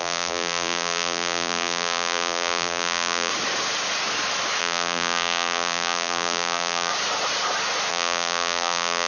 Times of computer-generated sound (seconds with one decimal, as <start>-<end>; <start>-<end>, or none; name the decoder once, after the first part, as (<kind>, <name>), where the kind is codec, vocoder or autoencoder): 0.0-3.3 (vocoder, BigVGAN v2); 4.6-6.9; 7.9-9.1